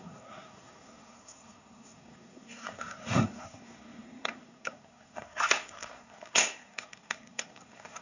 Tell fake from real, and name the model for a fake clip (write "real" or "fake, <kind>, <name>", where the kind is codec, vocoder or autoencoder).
fake, codec, SNAC